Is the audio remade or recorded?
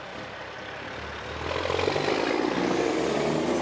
recorded